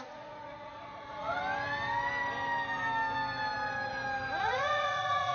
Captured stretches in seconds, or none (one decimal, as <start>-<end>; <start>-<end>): 1.4-4.4